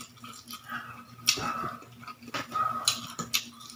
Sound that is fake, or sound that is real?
real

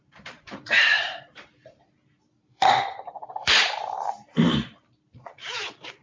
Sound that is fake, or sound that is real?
fake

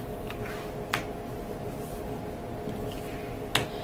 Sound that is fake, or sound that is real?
real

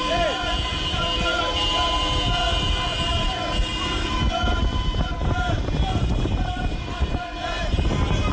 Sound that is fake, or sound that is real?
fake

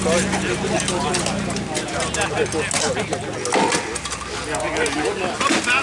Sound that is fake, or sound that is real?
real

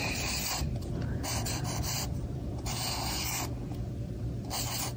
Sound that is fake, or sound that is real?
fake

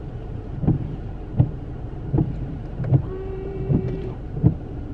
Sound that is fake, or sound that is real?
fake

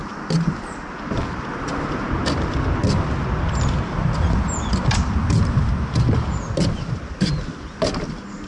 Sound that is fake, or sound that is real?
real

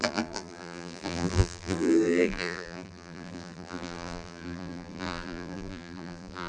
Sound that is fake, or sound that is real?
fake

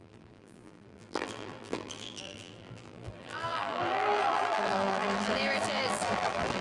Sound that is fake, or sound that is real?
fake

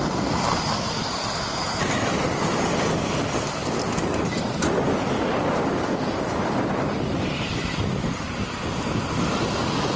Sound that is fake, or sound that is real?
fake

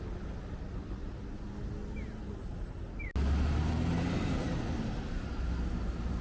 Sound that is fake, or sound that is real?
real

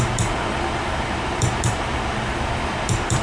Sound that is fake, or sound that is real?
fake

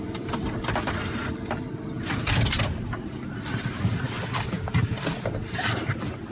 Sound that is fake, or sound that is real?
fake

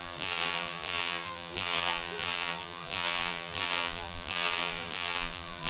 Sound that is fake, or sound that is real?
fake